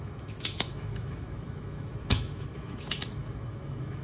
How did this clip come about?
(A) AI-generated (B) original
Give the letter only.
A